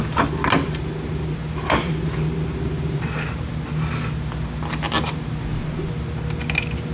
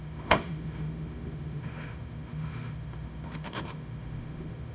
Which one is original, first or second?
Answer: first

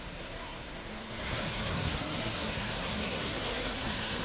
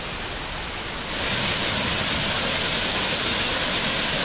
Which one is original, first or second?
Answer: second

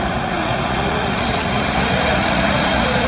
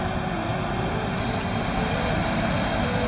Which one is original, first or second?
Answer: second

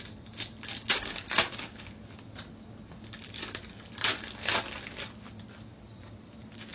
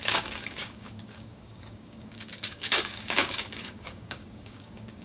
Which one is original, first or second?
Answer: first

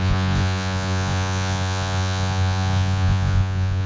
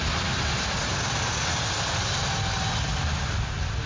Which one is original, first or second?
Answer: second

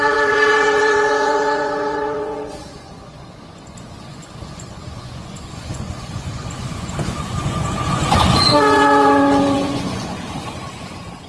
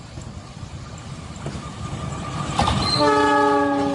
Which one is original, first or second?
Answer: second